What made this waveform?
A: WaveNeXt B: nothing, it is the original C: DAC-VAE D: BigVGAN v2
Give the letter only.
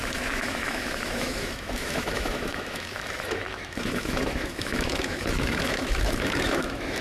C